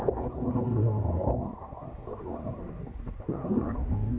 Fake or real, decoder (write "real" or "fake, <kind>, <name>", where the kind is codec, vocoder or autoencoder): fake, codec, SNAC